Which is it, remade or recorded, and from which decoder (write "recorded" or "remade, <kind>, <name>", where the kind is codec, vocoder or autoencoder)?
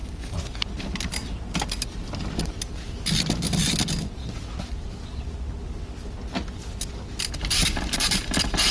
recorded